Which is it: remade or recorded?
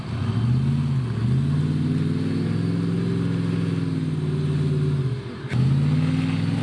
recorded